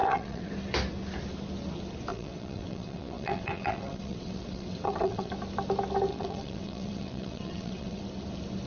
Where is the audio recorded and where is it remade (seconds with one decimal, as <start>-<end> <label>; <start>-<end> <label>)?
0.0-0.5 remade; 0.5-2.1 recorded; 2.1-5.3 remade; 5.3-6.1 recorded; 6.1-8.0 remade; 8.0-8.7 recorded